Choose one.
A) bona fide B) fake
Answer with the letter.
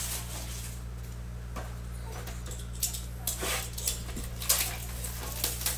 A